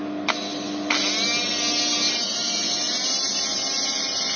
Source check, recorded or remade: recorded